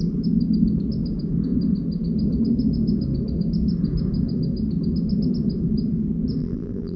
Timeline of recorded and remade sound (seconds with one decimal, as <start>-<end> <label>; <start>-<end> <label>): 0.0-6.4 recorded; 6.4-7.0 remade